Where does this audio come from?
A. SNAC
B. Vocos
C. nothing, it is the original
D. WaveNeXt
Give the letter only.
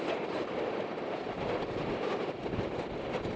C